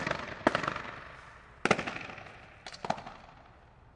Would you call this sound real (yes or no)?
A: yes